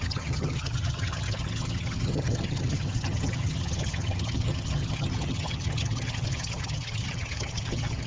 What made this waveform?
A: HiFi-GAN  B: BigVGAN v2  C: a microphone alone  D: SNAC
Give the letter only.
A